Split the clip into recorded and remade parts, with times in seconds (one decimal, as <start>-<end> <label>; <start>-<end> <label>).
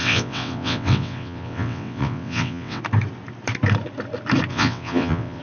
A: 0.0-2.8 remade; 2.8-4.5 recorded; 4.5-5.4 remade